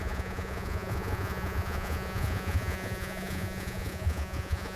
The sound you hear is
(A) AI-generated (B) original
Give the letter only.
A